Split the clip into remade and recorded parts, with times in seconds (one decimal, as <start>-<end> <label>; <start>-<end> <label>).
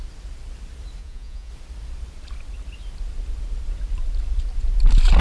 0.0-1.0 recorded; 1.0-1.5 remade; 1.5-5.2 recorded